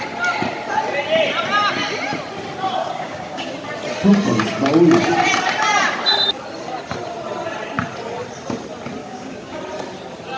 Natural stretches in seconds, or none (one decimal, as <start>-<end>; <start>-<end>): 0.0-2.8; 3.5-9.0; 9.6-10.4